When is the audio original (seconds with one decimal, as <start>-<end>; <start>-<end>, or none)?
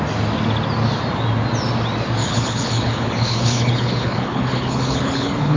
0.0-2.2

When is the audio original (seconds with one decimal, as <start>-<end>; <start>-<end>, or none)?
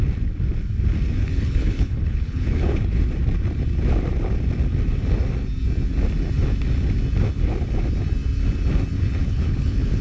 0.0-1.2; 3.0-9.2